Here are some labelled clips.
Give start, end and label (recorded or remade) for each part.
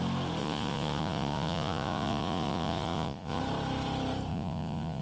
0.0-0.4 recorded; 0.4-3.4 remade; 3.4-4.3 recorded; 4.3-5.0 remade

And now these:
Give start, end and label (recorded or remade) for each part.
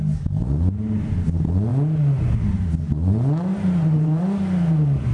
0.0-3.5 recorded; 3.5-4.2 remade; 4.2-5.1 recorded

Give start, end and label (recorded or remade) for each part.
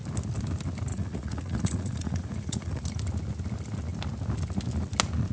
0.0-0.9 recorded; 0.9-2.8 remade; 2.8-5.3 recorded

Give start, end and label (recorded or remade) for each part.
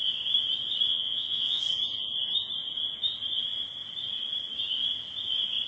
0.0-0.9 recorded; 0.9-1.6 remade; 1.6-5.7 recorded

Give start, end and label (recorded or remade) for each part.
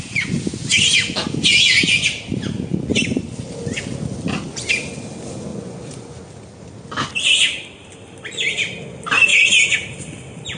0.0-2.7 recorded; 2.7-3.3 remade; 3.3-5.5 recorded; 5.5-6.3 remade; 6.3-10.6 recorded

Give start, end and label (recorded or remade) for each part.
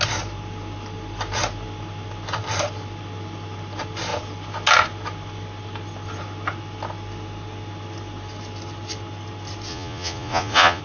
0.0-9.7 recorded; 9.7-10.8 remade